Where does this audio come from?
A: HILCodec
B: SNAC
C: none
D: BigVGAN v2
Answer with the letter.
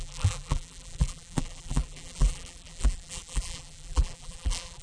D